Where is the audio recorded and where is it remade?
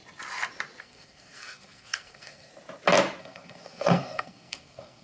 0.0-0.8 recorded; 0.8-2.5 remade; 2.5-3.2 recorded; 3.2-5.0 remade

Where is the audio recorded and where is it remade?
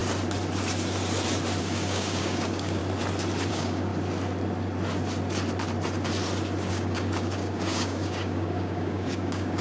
0.0-1.6 recorded; 1.6-2.8 remade; 2.8-3.5 recorded; 3.5-3.9 remade; 3.9-6.7 recorded; 6.7-9.6 remade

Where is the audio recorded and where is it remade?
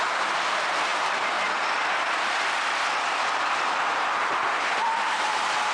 0.0-0.9 recorded; 0.9-4.3 remade; 4.3-5.7 recorded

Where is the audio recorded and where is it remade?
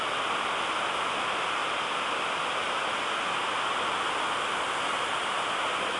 0.0-6.0 recorded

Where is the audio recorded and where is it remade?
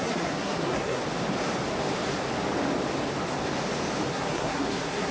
0.0-1.0 remade; 1.0-4.1 recorded; 4.1-5.1 remade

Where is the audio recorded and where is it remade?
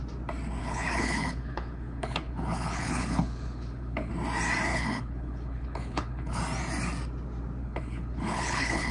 0.0-0.6 recorded; 0.6-4.1 remade; 4.1-4.7 recorded; 4.7-6.4 remade; 6.4-7.6 recorded; 7.6-8.9 remade